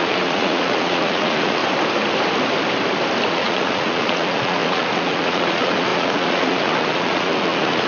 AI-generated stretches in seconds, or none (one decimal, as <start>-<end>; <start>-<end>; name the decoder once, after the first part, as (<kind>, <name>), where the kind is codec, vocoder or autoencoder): 0.0-1.6 (vocoder, Vocos); 3.3-7.9